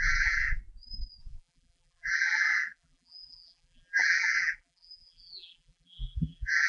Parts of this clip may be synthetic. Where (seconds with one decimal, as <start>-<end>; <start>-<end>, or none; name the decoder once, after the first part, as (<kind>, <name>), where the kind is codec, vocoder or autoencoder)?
0.0-0.6 (vocoder, BigVGAN v2); 1.2-6.7